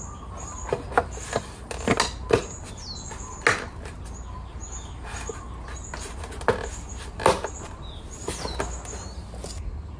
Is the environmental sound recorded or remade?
recorded